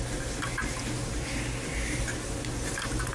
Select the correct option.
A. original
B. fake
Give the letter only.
A